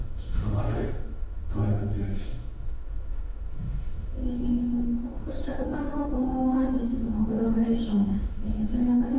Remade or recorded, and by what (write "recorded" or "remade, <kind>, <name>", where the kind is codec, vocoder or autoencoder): remade, autoencoder, DAC-VAE